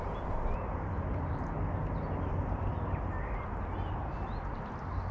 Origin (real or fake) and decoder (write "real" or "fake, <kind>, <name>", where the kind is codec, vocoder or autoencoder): real